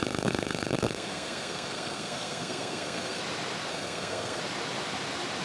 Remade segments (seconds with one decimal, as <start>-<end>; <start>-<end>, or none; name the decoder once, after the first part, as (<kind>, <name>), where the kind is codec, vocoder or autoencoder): 0.0-3.2 (codec, SNAC); 3.7-4.4